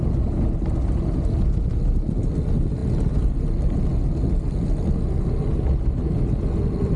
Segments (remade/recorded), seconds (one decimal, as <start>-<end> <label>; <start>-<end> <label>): 0.0-7.0 recorded